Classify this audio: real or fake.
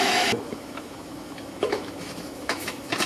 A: fake